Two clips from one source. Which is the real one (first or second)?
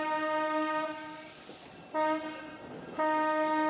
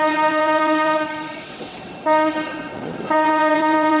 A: first